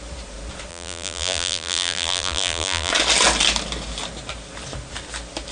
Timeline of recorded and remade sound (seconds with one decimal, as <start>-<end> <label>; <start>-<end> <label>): 0.0-0.7 recorded; 0.7-2.9 remade; 2.9-5.5 recorded